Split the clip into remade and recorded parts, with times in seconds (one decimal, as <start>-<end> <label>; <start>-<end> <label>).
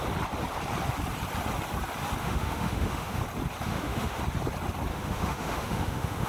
0.0-2.2 recorded; 2.2-3.2 remade; 3.2-3.7 recorded; 3.7-4.2 remade; 4.2-4.9 recorded; 4.9-6.3 remade